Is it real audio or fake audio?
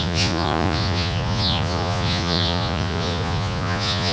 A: fake